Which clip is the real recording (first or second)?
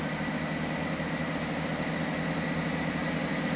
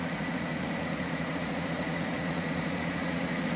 first